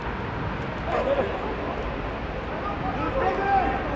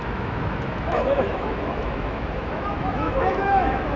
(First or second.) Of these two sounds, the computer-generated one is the second